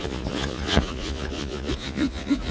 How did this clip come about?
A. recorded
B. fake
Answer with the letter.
B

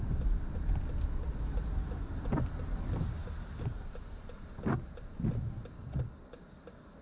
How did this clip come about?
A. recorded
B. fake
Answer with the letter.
A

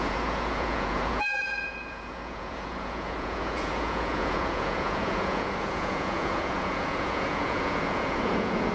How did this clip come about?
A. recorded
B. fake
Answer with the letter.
B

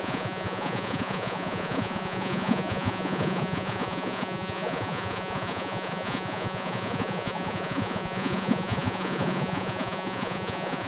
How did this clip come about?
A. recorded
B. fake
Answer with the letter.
B